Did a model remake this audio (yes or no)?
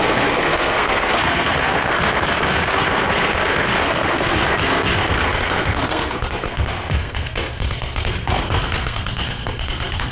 yes